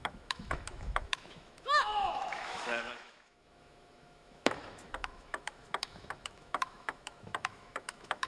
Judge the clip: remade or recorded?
remade